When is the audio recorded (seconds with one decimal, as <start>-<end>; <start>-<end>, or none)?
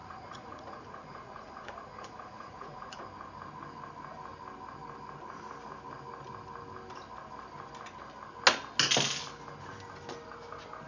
3.0-10.9